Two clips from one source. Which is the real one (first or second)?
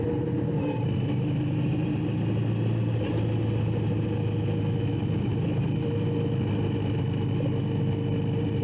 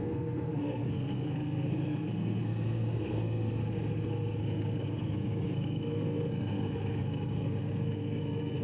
first